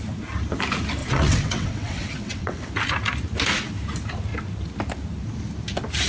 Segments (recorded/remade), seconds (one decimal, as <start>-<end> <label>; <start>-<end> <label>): 0.0-1.0 recorded; 1.0-2.7 remade; 2.7-6.1 recorded